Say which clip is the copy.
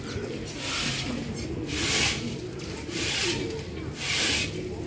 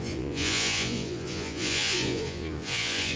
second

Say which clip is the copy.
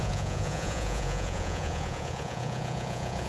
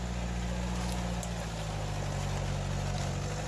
first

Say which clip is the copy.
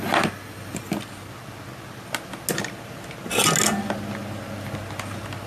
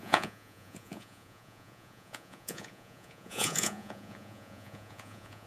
second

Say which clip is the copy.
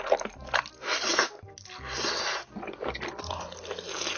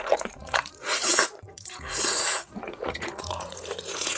second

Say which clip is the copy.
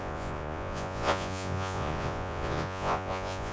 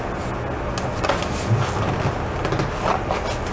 first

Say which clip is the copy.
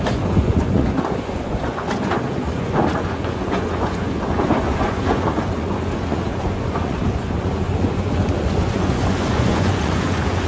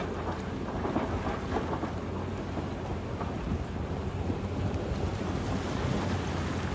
first